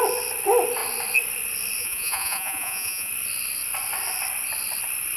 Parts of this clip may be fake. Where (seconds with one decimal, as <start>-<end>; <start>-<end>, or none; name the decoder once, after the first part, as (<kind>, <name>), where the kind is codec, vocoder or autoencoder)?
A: 1.8-3.1 (vocoder, Vocos)